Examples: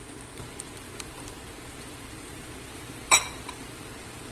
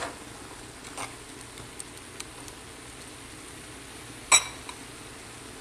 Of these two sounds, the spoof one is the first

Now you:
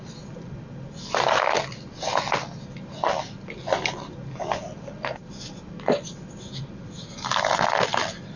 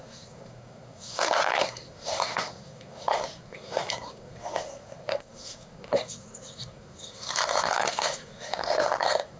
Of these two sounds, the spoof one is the second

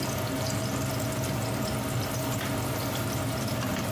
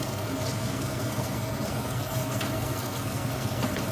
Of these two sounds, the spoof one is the second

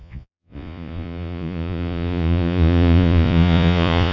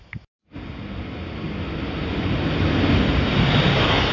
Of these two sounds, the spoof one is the first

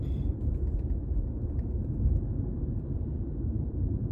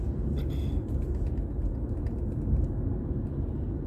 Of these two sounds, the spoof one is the first